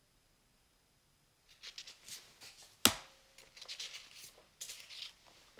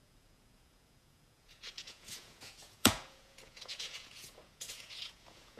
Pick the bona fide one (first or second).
first